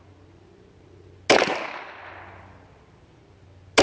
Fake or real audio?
real